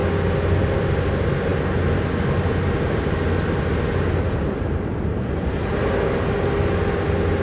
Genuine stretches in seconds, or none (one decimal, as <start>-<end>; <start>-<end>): 0.0-7.4